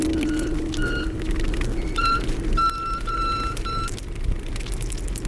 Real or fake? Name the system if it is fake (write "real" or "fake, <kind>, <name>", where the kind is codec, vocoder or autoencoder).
real